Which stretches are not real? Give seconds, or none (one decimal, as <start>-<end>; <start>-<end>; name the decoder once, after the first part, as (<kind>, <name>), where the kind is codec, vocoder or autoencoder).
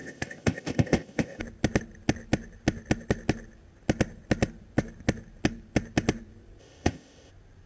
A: 0.0-1.4 (codec, ZipCodec); 6.6-7.3